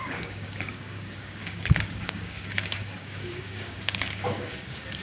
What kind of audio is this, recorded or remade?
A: remade